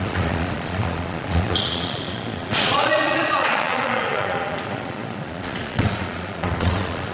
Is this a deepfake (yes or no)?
yes